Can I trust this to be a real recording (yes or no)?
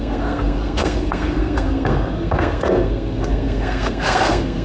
no